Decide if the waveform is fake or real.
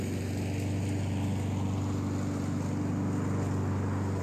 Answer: real